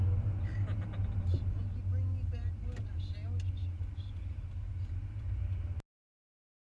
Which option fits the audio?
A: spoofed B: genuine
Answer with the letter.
B